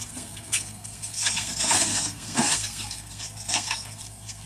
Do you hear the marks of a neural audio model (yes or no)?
yes